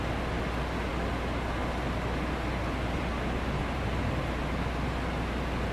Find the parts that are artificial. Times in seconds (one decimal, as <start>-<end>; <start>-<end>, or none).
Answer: 3.6-4.6